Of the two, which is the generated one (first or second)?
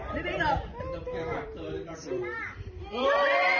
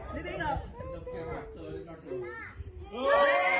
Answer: first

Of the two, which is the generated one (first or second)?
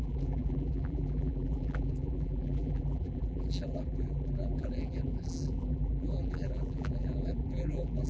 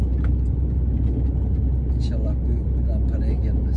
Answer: first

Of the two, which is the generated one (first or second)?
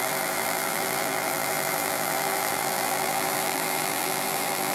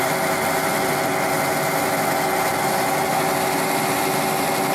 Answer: first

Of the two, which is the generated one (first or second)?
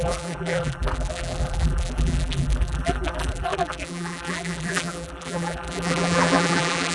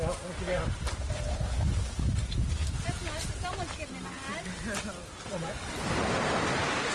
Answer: first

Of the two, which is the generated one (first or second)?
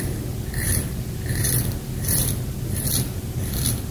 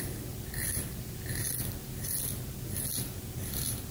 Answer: first